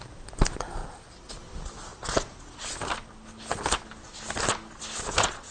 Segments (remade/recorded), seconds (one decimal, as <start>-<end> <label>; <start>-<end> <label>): 0.0-5.5 recorded